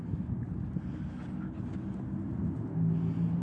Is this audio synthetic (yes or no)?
no